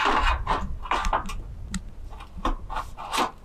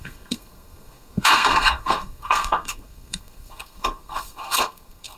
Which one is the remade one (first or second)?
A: second